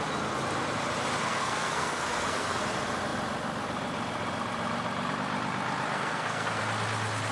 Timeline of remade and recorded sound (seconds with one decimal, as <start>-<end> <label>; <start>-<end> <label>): 0.0-1.2 recorded; 1.2-2.6 remade; 2.6-5.9 recorded; 5.9-6.6 remade; 6.6-7.3 recorded